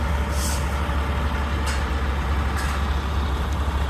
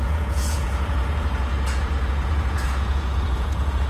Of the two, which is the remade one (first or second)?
second